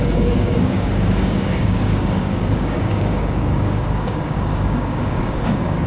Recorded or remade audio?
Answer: remade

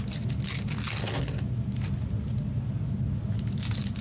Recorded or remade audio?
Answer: recorded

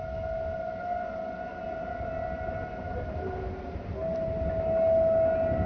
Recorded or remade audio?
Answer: recorded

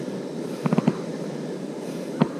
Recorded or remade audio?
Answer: remade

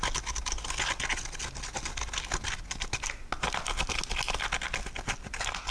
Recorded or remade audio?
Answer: recorded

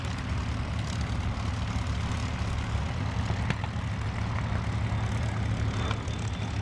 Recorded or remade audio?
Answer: recorded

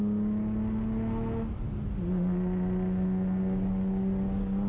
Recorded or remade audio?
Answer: recorded